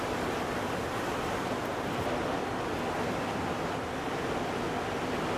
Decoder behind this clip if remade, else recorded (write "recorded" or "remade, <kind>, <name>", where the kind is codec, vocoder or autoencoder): recorded